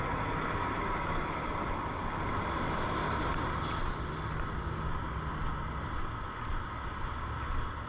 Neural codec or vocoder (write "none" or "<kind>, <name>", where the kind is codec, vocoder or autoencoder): none